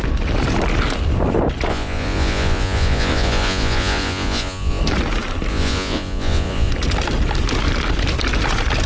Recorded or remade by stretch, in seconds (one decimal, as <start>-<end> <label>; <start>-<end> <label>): 0.0-1.7 recorded; 1.7-4.8 remade; 4.8-5.5 recorded; 5.5-6.7 remade; 6.7-8.9 recorded